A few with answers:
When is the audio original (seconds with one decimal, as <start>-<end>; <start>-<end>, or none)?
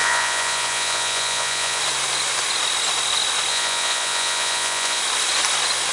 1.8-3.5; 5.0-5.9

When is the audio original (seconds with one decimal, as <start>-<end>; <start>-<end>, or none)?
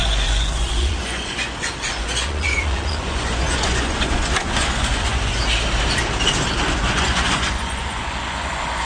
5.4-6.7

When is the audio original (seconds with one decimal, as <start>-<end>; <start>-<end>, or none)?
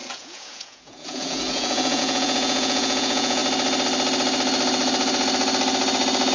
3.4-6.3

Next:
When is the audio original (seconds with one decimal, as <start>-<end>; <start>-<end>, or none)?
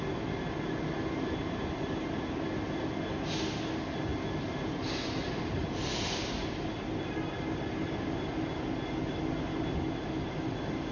0.0-10.9